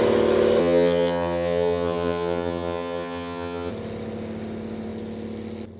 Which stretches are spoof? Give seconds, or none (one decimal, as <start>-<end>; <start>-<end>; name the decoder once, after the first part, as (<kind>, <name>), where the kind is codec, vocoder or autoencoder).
0.6-3.7 (vocoder, HiFi-GAN)